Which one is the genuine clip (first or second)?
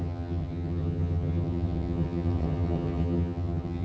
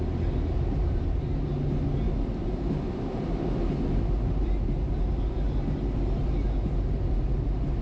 second